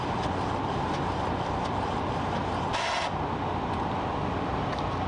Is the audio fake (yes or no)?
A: no